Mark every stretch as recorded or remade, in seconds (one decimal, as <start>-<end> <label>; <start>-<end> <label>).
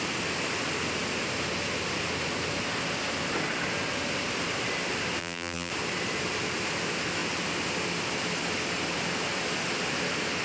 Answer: 0.0-5.2 recorded; 5.2-5.7 remade; 5.7-10.4 recorded